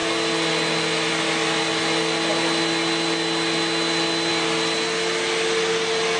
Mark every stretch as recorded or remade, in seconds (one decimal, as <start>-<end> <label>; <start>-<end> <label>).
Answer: 0.0-6.2 recorded

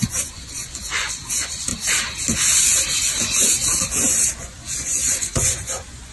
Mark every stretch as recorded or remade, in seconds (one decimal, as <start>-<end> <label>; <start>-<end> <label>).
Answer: 0.0-1.7 remade; 1.7-4.3 recorded; 4.3-6.1 remade

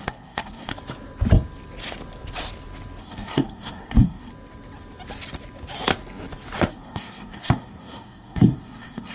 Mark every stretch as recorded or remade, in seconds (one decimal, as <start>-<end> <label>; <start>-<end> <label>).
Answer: 0.0-0.7 remade; 0.7-3.0 recorded; 3.0-4.3 remade; 4.3-6.7 recorded; 6.7-9.1 remade